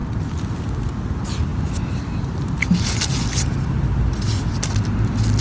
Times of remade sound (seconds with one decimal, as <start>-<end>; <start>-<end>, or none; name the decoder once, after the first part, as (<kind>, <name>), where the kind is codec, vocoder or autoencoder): none